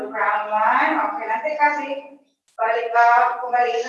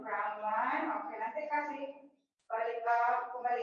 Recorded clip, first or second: first